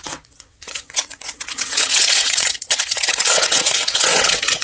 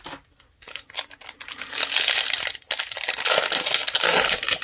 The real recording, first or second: second